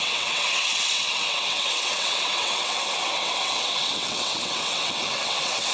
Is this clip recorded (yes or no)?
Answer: no